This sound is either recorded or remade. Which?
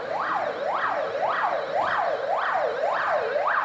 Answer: recorded